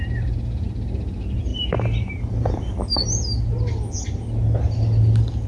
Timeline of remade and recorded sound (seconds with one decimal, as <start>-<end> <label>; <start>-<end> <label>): 0.0-5.5 recorded

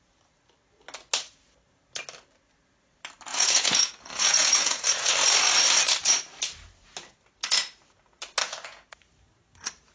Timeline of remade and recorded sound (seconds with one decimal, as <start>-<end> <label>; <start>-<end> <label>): 0.0-3.3 recorded; 3.3-5.1 remade; 5.1-8.4 recorded; 8.4-8.9 remade; 8.9-9.9 recorded

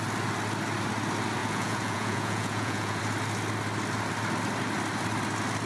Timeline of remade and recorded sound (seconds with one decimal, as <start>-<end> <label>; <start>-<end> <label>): 0.0-1.4 recorded; 1.4-3.0 remade; 3.0-5.7 recorded

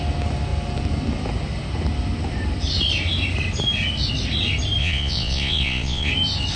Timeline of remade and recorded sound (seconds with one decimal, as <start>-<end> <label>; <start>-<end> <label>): 0.0-4.8 recorded; 4.8-6.1 remade; 6.1-6.6 recorded

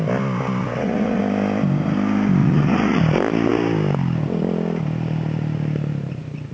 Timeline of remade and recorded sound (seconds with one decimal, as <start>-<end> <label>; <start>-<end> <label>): 0.0-0.6 recorded; 0.6-1.2 remade; 1.2-2.4 recorded; 2.4-3.0 remade; 3.0-6.5 recorded